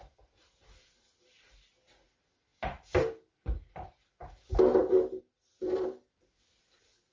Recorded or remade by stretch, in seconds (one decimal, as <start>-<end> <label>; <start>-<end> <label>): 0.0-7.1 recorded